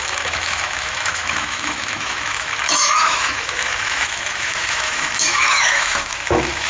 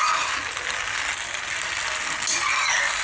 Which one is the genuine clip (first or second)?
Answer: second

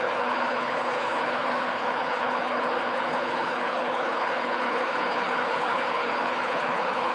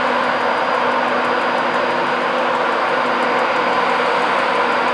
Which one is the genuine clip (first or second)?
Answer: second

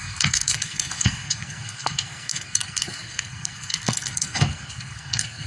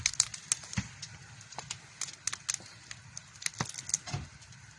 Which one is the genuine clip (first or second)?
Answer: second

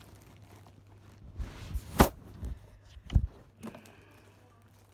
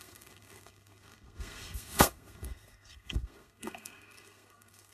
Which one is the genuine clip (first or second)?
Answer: first